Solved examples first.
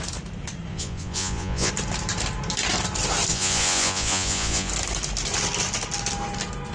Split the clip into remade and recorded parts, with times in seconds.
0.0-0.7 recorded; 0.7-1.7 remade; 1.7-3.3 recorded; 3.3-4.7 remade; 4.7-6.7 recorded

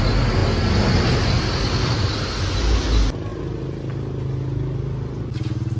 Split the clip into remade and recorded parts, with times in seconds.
0.0-5.8 recorded

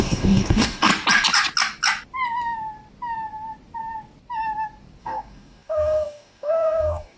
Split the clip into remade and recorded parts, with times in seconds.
0.0-0.9 remade; 0.9-5.0 recorded; 5.0-7.2 remade

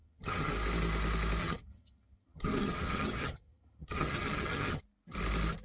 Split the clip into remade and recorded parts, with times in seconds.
0.0-0.5 remade; 0.5-1.4 recorded; 1.4-4.8 remade; 4.8-5.6 recorded

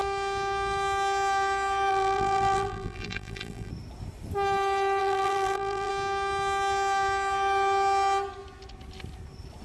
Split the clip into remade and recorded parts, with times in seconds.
0.0-1.9 recorded; 1.9-3.7 remade; 3.7-5.0 recorded; 5.0-5.9 remade; 5.9-9.6 recorded

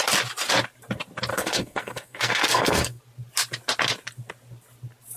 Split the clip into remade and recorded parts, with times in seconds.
0.0-1.3 recorded; 1.3-3.0 remade; 3.0-5.2 recorded